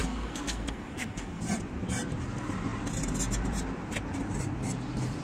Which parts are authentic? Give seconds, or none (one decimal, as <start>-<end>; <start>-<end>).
1.4-5.2